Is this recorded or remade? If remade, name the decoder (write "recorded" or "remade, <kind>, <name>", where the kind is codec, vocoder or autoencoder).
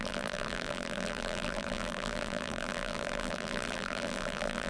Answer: remade, vocoder, BigVGAN v2